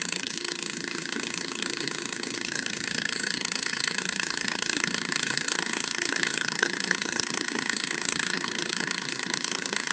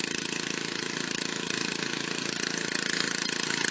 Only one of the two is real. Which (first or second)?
second